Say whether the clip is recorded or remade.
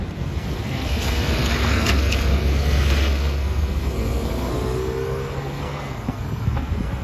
remade